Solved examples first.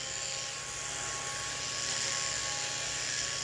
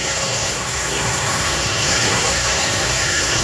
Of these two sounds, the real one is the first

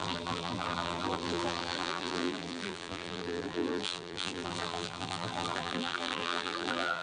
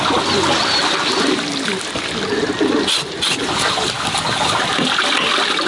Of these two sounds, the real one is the second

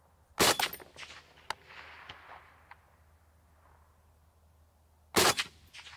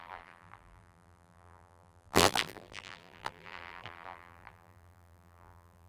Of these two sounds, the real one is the first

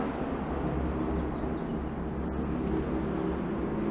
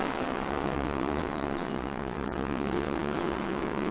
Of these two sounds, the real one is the first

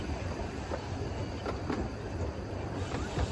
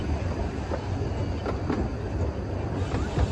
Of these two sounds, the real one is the second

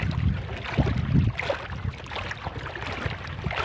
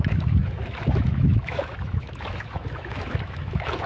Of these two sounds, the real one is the first